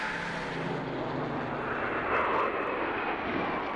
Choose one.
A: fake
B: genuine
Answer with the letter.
B